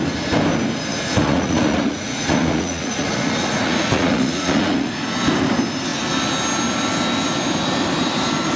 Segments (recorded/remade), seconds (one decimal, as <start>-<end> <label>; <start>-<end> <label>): 0.0-0.9 recorded; 0.9-4.9 remade; 4.9-8.6 recorded